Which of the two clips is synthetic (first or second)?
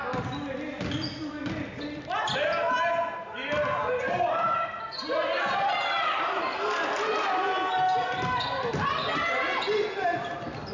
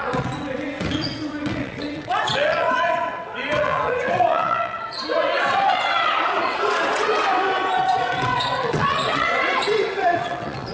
second